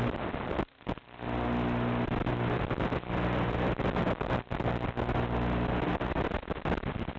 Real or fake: real